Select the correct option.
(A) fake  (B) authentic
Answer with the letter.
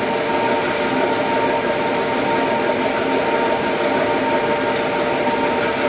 B